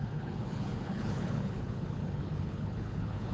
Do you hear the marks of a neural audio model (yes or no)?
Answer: yes